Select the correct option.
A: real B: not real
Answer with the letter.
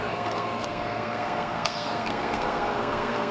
B